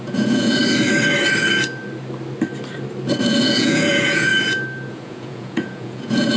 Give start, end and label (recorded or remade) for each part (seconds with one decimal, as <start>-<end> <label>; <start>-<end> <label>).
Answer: 0.0-0.6 remade; 0.6-3.2 recorded; 3.2-4.3 remade; 4.3-4.9 recorded; 4.9-6.4 remade